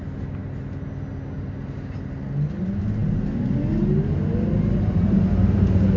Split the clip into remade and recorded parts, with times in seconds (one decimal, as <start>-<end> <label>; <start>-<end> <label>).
0.0-6.0 recorded